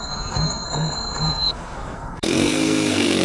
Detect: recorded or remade remade